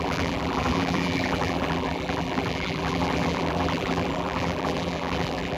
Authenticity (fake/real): fake